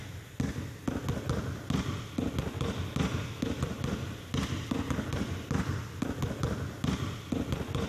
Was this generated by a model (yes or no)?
no